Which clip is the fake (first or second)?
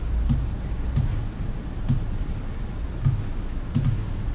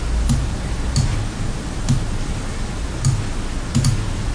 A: first